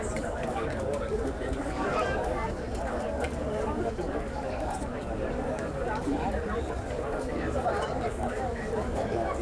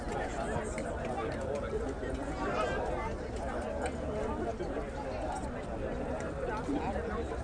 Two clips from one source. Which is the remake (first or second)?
first